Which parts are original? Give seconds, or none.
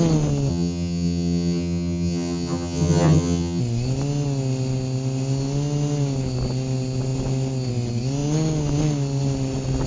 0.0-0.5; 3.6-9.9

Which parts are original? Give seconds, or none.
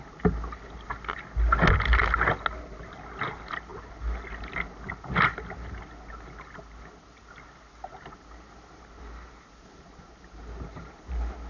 0.0-11.5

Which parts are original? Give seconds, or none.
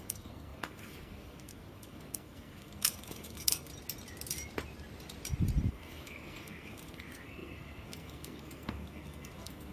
3.7-5.7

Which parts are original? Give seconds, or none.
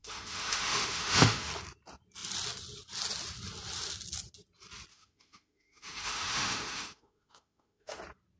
1.5-4.9; 8.0-8.4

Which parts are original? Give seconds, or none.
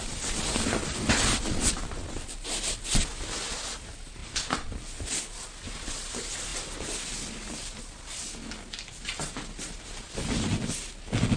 0.0-11.4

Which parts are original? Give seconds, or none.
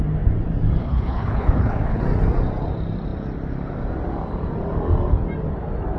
0.0-0.8; 2.0-6.0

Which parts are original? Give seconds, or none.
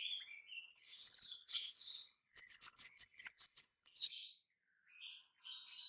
0.0-0.7; 4.1-5.9